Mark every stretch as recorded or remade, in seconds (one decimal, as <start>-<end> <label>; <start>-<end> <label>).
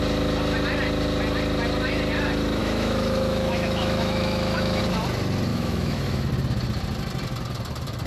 0.0-2.6 recorded; 2.6-4.8 remade; 4.8-5.5 recorded; 5.5-6.3 remade; 6.3-8.1 recorded